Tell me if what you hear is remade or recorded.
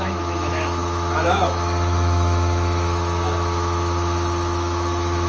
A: remade